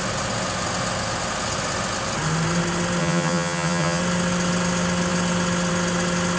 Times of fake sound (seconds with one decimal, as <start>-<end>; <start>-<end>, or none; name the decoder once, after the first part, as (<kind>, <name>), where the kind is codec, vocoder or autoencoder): 3.0-4.0 (vocoder, HiFi-GAN)